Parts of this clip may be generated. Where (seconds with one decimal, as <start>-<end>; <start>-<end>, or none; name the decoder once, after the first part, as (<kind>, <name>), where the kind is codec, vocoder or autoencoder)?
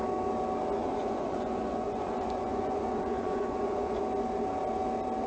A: 0.8-4.0 (vocoder, Vocos)